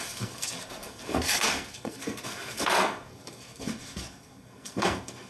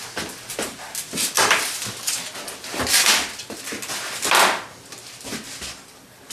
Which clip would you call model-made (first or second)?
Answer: first